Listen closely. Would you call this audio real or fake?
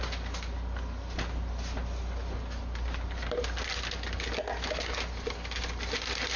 real